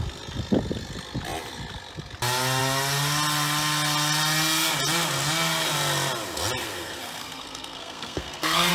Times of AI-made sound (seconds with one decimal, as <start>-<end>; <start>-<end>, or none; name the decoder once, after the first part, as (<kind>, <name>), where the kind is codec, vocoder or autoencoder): 6.6-8.7 (codec, SNAC)